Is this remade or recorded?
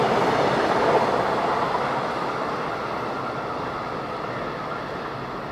recorded